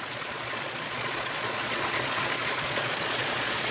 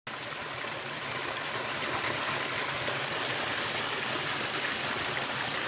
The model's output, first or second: first